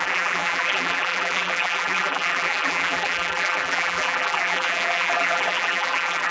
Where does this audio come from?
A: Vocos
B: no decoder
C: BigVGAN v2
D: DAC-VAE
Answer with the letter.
C